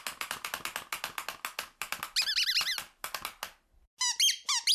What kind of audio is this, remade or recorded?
recorded